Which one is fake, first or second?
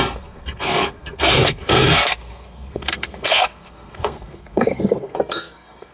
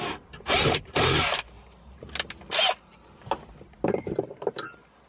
first